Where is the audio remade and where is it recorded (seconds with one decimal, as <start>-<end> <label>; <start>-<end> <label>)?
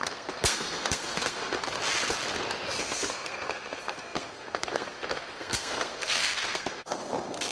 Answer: 0.0-1.6 remade; 1.6-2.8 recorded; 2.8-7.5 remade